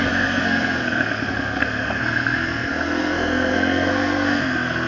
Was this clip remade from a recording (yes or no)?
yes